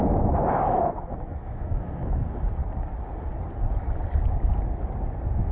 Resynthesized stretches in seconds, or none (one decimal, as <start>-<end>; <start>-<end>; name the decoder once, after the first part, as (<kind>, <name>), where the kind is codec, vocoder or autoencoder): 0.0-2.2 (autoencoder, DAC-VAE)